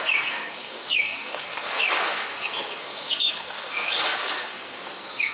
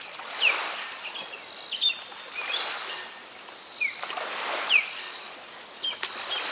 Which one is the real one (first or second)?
second